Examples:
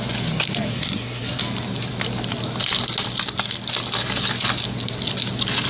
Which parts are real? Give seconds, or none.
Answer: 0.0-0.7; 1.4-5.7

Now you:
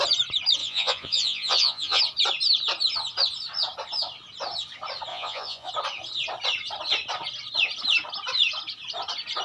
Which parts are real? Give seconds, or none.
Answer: 0.0-0.6; 2.0-5.1; 5.7-9.4

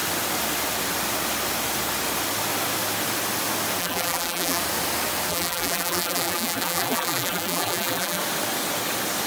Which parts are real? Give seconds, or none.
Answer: 0.0-3.8; 4.6-5.3; 8.2-9.3

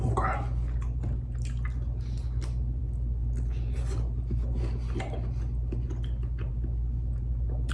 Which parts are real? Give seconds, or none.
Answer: 0.0-7.7

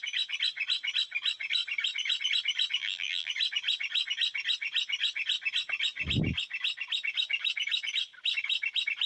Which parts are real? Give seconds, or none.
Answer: 0.0-2.8; 3.3-9.1

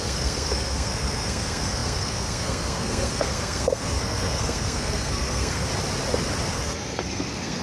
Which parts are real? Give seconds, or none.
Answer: 5.7-6.5